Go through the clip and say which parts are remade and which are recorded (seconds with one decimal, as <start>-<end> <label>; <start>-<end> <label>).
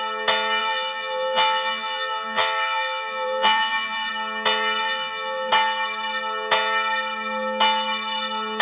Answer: 0.0-0.6 recorded; 0.6-4.1 remade; 4.1-4.8 recorded; 4.8-5.5 remade; 5.5-8.6 recorded